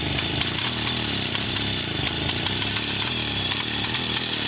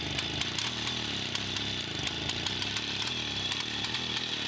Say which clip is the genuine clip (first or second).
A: second